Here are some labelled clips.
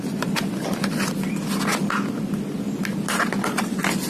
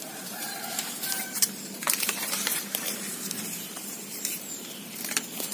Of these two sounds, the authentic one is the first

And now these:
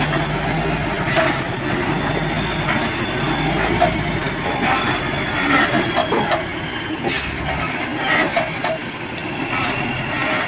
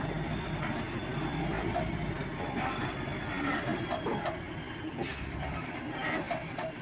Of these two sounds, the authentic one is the first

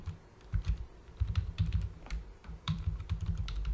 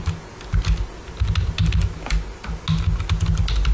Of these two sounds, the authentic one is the second